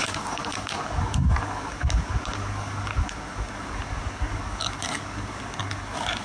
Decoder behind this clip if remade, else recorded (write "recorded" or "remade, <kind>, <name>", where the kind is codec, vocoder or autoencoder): remade, codec, DAC